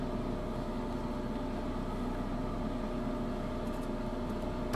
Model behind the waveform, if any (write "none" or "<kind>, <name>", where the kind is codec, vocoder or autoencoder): none